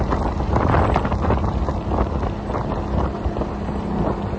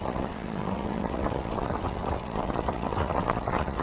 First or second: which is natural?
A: first